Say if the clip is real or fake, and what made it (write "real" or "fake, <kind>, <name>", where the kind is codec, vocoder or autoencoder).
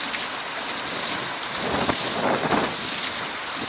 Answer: real